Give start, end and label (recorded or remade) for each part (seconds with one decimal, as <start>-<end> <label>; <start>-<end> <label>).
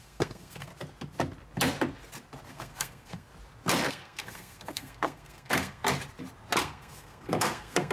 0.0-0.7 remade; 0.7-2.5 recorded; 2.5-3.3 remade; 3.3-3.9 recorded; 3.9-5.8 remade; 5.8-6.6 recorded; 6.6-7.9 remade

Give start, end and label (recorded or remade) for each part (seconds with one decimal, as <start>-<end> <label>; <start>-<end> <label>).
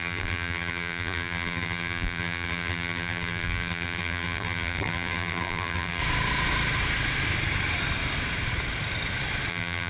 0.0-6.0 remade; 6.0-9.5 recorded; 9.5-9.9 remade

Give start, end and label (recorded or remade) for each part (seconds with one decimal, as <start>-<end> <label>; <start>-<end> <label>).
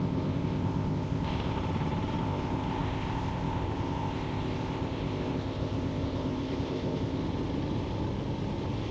0.0-1.6 remade; 1.6-2.2 recorded; 2.2-7.2 remade; 7.2-8.9 recorded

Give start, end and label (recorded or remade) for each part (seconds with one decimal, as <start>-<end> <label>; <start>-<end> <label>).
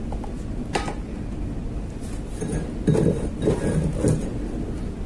0.0-5.1 recorded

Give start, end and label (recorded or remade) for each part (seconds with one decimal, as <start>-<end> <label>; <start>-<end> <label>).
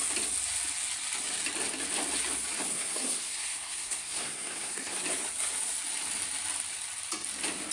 0.0-2.7 recorded; 2.7-5.0 remade; 5.0-7.7 recorded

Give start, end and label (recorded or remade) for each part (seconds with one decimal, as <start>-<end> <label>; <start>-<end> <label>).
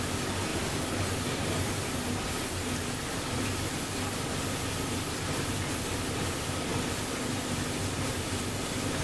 0.0-9.0 recorded